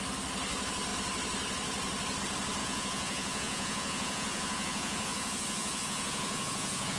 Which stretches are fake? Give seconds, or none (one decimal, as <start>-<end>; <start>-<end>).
2.6-7.0